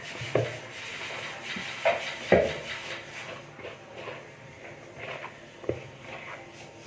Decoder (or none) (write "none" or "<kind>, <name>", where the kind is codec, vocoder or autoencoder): none